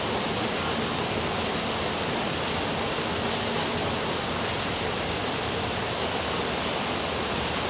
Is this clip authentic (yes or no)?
yes